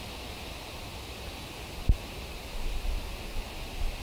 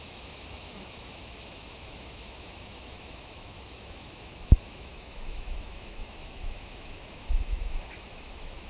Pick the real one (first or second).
first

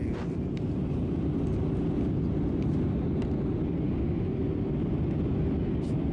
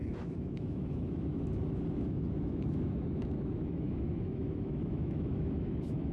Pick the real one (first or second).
first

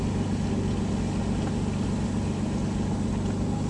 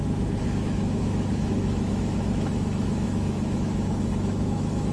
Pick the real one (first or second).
first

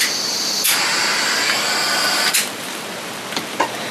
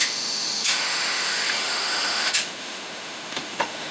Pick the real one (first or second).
first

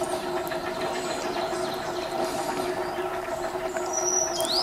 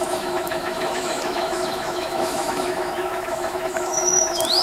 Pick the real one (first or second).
first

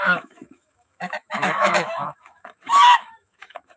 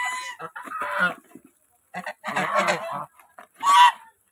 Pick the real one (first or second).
second